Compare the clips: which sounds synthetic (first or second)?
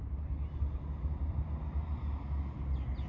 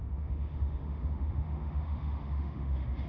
second